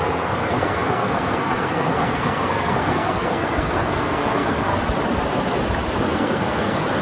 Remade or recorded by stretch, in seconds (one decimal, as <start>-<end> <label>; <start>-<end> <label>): 0.0-4.7 remade; 4.7-6.1 recorded; 6.1-7.0 remade